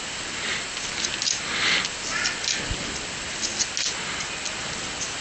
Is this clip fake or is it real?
real